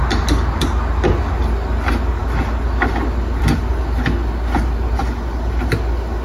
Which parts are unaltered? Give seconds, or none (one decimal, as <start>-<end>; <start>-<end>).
0.0-6.2